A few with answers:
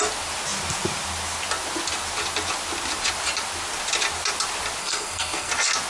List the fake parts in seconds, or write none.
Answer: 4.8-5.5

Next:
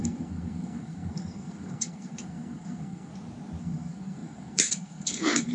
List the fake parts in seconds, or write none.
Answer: 0.0-3.1; 3.6-5.5

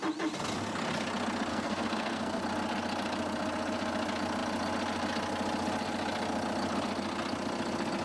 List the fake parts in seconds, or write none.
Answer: 1.5-2.4

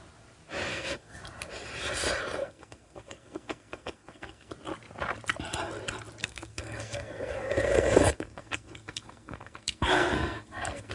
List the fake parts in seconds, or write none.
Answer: 0.7-1.2; 2.4-4.5; 6.2-10.9

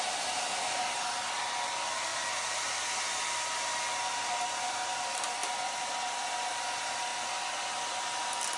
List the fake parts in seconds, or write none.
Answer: none

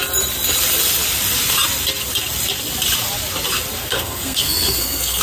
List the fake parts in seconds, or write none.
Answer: 3.8-5.2

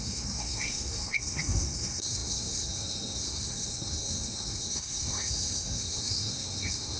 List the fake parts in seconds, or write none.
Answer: 0.0-7.0

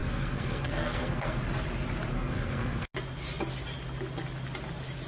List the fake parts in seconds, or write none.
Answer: 0.0-1.4; 2.1-2.9